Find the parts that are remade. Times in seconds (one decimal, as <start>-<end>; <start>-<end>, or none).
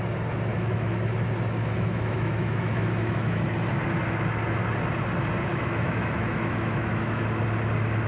0.5-1.1; 1.6-3.4; 5.5-7.4